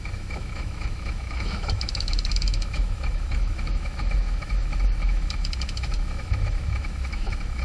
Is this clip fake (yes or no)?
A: yes